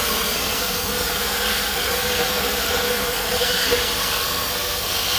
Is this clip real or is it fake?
fake